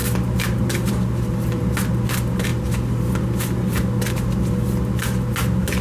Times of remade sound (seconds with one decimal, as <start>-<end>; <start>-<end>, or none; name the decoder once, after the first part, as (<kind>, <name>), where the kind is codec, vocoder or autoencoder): none